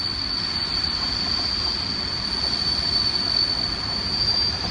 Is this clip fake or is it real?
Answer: real